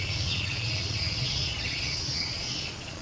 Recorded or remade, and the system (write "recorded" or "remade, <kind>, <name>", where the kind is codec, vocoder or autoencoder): remade, vocoder, Vocos